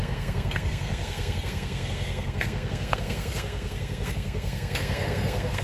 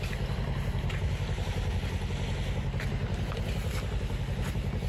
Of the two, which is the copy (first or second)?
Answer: first